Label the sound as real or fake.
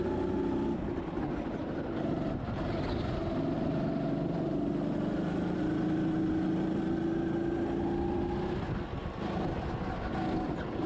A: real